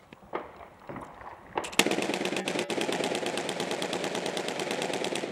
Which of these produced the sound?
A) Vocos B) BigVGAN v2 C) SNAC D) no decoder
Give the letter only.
D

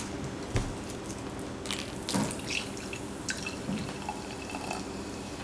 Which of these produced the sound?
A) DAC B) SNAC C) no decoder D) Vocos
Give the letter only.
C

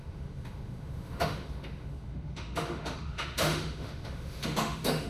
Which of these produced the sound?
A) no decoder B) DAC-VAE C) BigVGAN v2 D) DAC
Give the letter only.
B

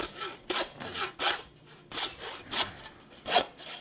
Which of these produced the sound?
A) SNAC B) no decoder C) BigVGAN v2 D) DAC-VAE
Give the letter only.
B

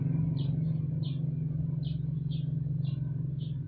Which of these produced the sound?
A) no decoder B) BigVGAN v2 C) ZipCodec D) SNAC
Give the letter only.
A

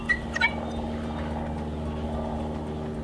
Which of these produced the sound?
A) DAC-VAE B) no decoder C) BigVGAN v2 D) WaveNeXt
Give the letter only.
B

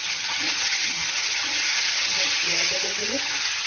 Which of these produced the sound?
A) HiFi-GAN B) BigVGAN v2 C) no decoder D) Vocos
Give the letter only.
A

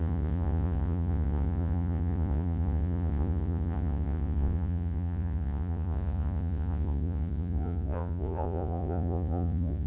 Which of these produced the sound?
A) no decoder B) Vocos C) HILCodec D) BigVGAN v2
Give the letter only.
B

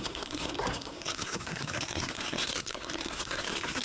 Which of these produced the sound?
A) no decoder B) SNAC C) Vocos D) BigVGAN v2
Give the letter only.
B